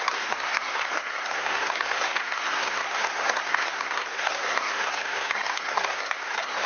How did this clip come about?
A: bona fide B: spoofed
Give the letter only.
B